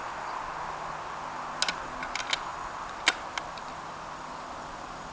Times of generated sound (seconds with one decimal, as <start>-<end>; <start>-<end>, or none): none